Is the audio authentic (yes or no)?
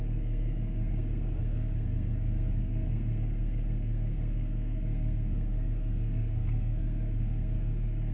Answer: no